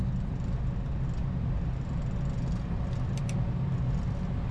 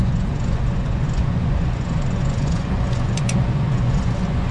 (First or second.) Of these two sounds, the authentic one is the first